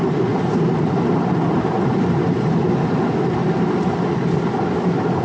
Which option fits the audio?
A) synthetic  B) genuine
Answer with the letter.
B